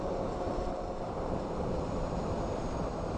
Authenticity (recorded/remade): remade